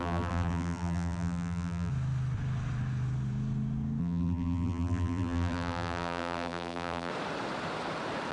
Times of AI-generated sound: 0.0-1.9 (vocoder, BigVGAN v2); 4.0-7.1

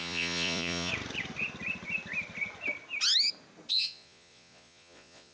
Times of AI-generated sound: 0.0-0.9 (vocoder, Vocos); 3.7-5.3

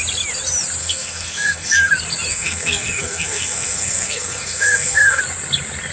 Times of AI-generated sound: 0.8-1.9 (codec, SNAC); 2.3-5.2